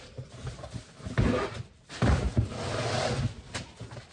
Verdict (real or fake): real